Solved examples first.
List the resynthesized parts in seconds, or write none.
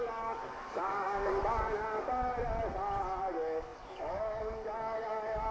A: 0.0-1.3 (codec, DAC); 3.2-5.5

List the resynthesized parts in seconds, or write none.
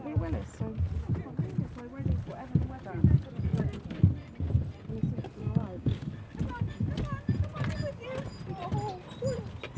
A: 5.4-6.1 (codec, DAC)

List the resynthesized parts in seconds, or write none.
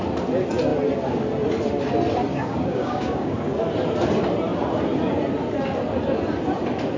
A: 2.3-3.6 (codec, DAC)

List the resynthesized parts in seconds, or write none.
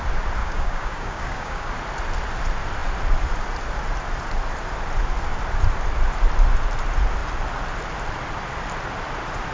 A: 0.4-1.7 (codec, DAC)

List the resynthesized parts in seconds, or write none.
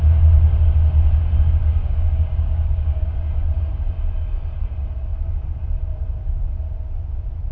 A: 1.6-3.7 (codec, DAC)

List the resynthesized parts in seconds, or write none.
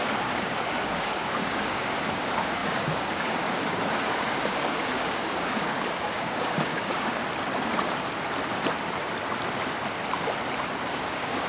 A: 0.0-7.2 (codec, DAC); 10.9-11.5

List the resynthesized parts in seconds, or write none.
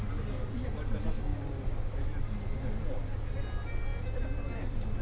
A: none